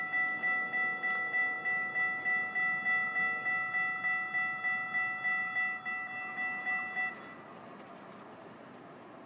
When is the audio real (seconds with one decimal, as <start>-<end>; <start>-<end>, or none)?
0.0-9.3